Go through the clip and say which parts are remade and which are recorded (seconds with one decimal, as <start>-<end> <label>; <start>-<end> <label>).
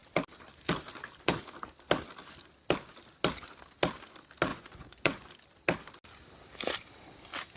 0.0-4.5 recorded; 4.5-5.3 remade; 5.3-7.6 recorded